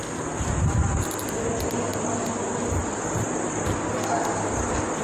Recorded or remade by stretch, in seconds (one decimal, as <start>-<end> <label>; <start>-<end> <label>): 0.0-5.0 recorded